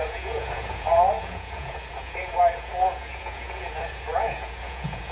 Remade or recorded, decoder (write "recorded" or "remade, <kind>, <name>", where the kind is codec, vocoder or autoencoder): remade, vocoder, Vocos